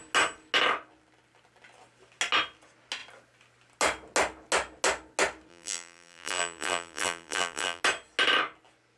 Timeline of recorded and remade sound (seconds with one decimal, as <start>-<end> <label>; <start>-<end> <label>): 0.0-5.5 recorded; 5.5-7.8 remade; 7.8-9.0 recorded